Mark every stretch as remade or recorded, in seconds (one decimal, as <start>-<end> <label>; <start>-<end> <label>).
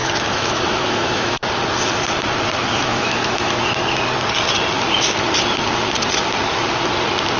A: 0.0-1.4 remade; 1.4-2.7 recorded; 2.7-3.8 remade; 3.8-7.4 recorded